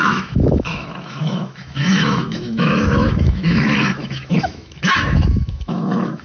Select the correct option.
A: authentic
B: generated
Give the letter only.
B